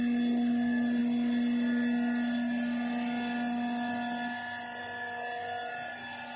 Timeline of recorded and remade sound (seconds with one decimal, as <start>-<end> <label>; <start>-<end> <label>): 0.0-6.4 recorded